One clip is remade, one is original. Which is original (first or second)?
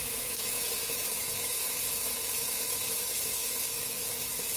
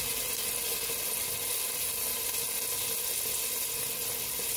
second